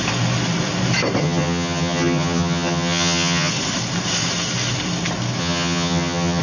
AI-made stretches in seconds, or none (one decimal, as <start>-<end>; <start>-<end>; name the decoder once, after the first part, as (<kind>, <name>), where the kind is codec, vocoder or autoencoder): 1.2-3.5 (vocoder, HiFi-GAN); 5.4-6.4